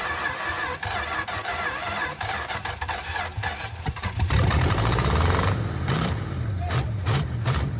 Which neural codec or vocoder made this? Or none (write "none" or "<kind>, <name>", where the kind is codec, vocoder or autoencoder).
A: vocoder, BigVGAN v2